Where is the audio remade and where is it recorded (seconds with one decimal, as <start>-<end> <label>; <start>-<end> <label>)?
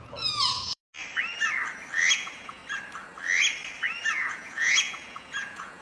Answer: 0.0-0.8 remade; 0.8-2.1 recorded; 2.1-2.6 remade; 2.6-4.0 recorded; 4.0-5.8 remade